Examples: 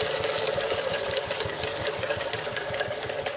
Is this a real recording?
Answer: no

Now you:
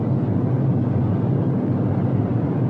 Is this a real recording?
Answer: yes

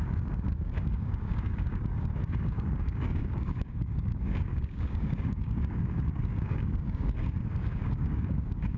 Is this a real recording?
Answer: no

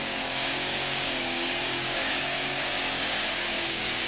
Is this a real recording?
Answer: no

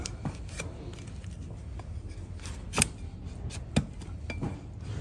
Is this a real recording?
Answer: yes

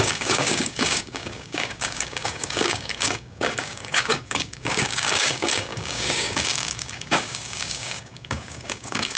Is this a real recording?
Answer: no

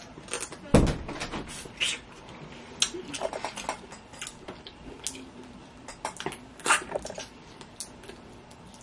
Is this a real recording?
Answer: yes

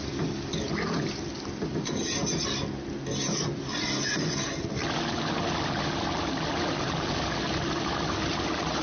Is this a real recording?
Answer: yes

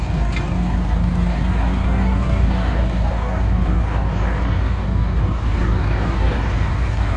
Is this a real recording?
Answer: no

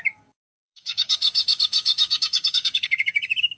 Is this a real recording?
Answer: no